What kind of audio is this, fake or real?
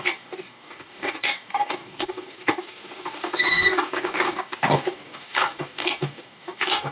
fake